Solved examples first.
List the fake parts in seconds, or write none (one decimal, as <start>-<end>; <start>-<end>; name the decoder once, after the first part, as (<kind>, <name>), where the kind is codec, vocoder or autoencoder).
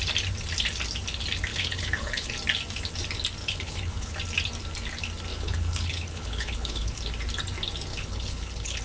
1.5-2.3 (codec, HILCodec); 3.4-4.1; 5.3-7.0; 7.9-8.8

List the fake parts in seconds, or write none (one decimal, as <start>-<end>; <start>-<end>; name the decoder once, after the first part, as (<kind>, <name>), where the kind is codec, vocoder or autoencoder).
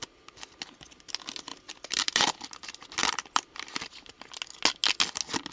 1.5-2.1 (vocoder, BigVGAN v2); 3.0-4.3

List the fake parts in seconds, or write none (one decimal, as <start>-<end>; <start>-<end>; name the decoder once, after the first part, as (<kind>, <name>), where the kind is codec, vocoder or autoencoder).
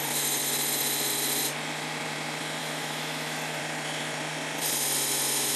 2.6-3.6 (autoencoder, DAC-VAE)